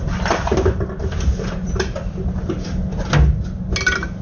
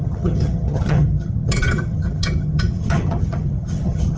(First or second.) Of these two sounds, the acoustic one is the first